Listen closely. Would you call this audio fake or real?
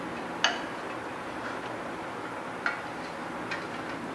real